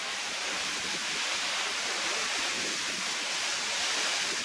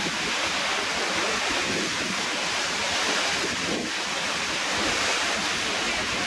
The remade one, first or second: second